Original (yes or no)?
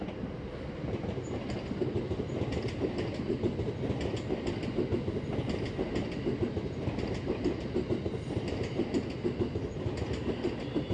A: yes